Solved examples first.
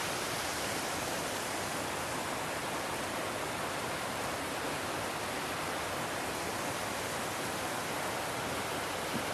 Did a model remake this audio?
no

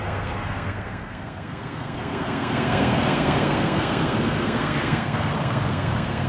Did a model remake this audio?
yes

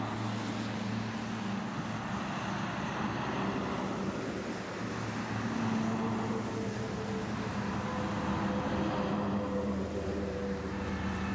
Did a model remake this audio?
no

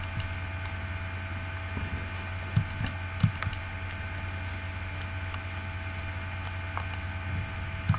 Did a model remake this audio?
no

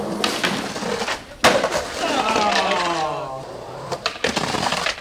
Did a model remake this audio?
no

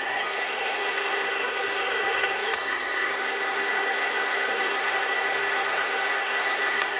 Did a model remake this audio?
yes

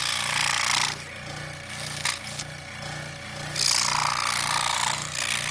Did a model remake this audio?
no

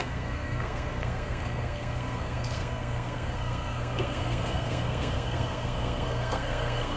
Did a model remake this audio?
yes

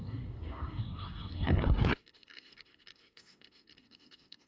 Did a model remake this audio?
yes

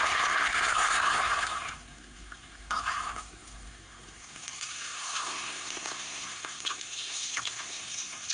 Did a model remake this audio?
yes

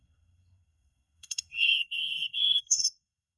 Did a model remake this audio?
yes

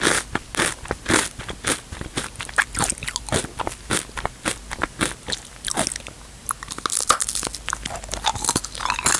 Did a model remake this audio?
no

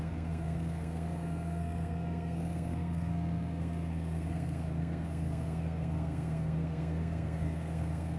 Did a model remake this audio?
yes